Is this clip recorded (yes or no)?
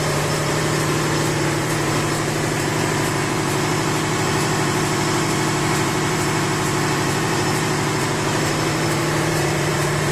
no